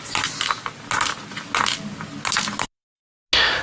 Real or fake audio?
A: real